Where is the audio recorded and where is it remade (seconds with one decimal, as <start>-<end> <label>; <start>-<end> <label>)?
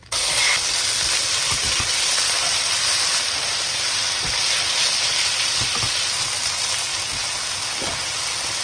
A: 0.0-0.6 remade; 0.6-8.6 recorded